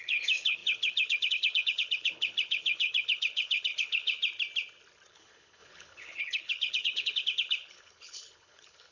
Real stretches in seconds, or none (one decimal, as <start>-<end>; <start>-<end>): 4.2-5.1